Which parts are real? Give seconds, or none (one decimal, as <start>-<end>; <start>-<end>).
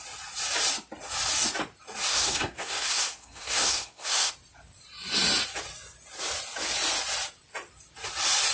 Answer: 0.0-2.1; 4.3-8.5